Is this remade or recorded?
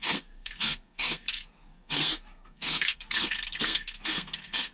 remade